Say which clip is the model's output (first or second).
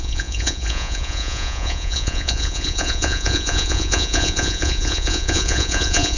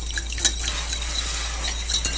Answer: first